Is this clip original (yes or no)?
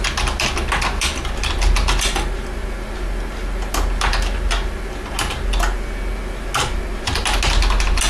yes